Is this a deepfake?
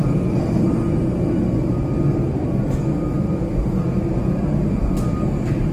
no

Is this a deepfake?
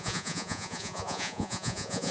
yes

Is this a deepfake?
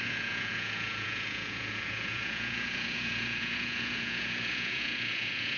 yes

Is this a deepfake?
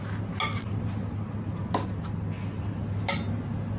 no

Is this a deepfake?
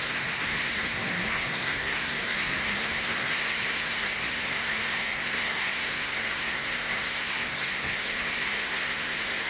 yes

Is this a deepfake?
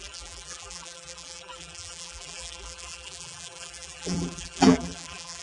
yes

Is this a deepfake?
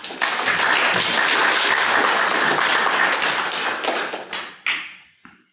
no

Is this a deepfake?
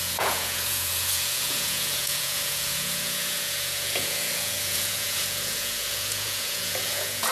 yes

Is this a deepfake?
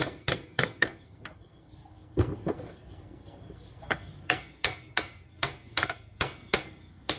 yes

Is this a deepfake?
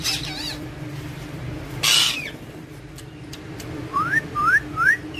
yes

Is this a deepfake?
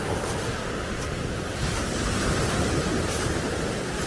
no